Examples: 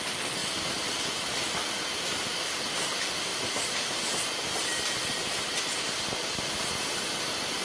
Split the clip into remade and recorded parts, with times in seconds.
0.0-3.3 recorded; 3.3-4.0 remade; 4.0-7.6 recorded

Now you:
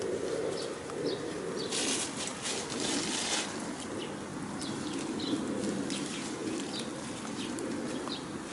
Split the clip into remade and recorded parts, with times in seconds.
0.0-2.3 recorded; 2.3-2.9 remade; 2.9-6.4 recorded; 6.4-7.3 remade; 7.3-8.5 recorded

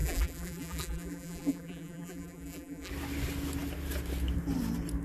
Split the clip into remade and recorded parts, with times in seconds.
0.0-2.9 remade; 2.9-5.0 recorded

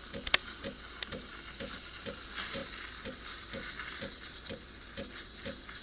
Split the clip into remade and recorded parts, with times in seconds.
0.0-2.6 recorded; 2.6-5.8 remade

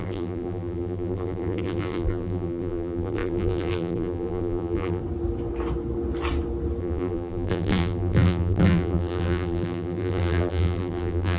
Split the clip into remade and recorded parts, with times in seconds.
0.0-5.0 remade; 5.0-6.8 recorded; 6.8-11.4 remade

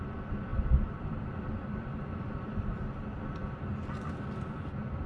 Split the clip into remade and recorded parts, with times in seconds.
0.0-0.5 recorded; 0.5-3.6 remade; 3.6-5.1 recorded

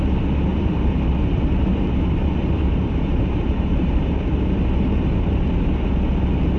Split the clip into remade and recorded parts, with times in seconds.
0.0-0.5 recorded; 0.5-4.0 remade; 4.0-6.6 recorded